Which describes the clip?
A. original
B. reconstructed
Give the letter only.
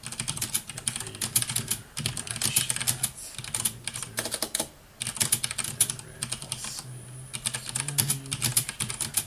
A